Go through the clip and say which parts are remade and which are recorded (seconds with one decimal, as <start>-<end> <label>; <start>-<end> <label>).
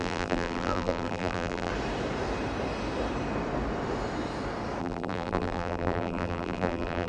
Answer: 0.0-1.7 remade; 1.7-4.8 recorded; 4.8-7.1 remade